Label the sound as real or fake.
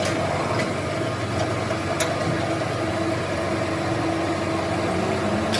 real